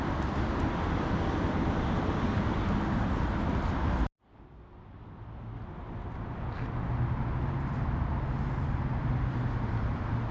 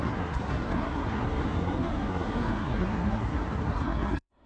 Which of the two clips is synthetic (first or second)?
second